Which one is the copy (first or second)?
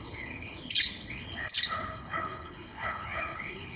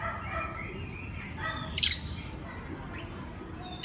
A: first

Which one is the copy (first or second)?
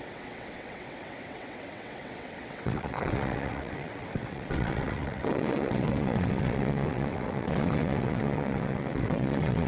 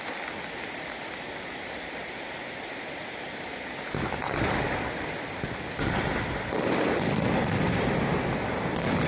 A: first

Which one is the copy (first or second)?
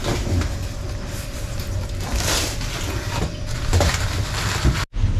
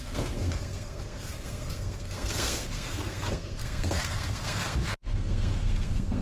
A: second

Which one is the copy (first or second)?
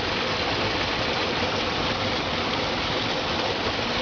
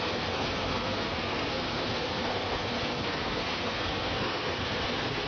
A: second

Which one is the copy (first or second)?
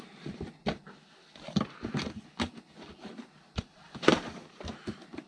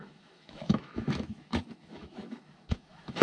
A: second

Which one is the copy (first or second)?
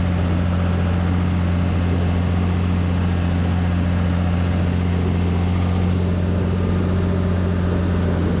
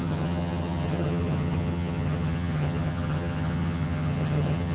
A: second